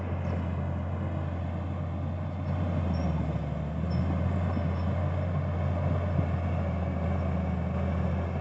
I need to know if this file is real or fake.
real